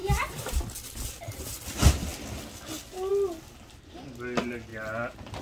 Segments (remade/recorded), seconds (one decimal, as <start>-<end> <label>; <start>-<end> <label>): 0.0-5.4 recorded